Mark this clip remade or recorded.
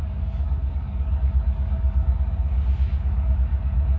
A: remade